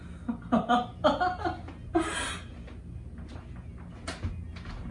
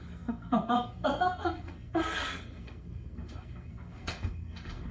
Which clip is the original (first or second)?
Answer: first